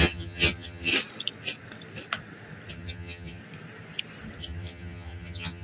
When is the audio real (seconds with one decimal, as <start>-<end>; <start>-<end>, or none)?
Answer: 0.9-2.7; 3.4-4.4